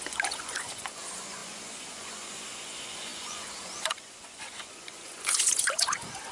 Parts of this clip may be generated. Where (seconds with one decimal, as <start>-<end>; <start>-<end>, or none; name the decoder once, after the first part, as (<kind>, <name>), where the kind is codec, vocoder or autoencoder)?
0.0-6.3 (vocoder, Vocos)